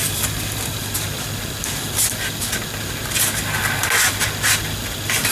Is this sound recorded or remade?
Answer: recorded